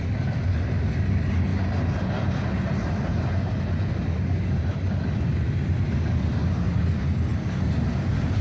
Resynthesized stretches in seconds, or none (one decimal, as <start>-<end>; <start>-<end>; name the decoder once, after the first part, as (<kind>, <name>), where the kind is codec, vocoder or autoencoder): none